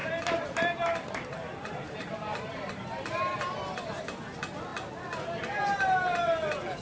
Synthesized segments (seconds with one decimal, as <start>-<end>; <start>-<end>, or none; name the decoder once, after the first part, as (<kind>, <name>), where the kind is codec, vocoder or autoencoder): 0.0-4.0 (vocoder, BigVGAN v2)

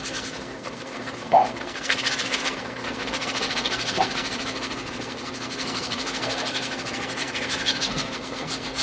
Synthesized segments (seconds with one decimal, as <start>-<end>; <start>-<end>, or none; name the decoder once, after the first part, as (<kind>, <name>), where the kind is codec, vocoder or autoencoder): 0.0-8.8 (codec, SNAC)